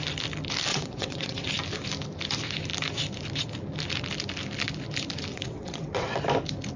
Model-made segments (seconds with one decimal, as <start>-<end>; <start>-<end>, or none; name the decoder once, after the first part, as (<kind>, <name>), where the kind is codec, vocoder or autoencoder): 0.7-1.5 (vocoder, WaveNeXt); 5.3-6.2